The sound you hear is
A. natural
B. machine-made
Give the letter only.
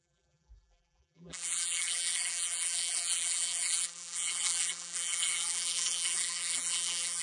B